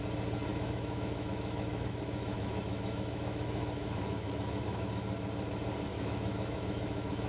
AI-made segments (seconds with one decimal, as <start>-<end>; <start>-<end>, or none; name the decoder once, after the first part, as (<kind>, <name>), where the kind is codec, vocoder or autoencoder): 0.5-4.9 (autoencoder, DAC-VAE); 5.9-7.3